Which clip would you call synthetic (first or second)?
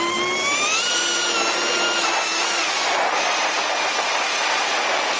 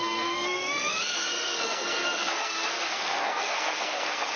second